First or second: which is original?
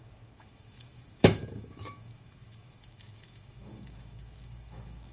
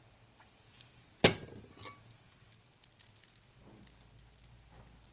second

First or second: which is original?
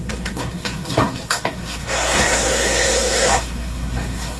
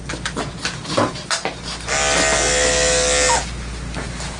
second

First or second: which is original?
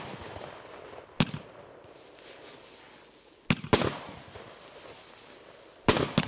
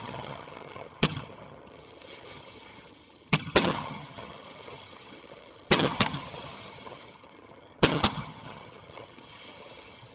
first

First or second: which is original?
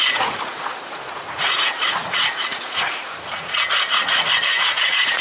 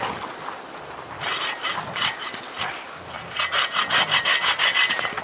second